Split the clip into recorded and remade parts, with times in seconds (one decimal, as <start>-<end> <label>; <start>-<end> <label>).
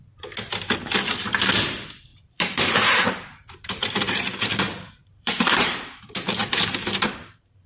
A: 0.0-2.1 recorded; 2.1-6.0 remade; 6.0-6.4 recorded; 6.4-7.7 remade